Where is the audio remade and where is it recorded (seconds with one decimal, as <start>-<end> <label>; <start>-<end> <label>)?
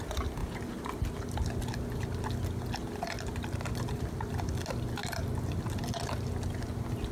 0.0-7.1 recorded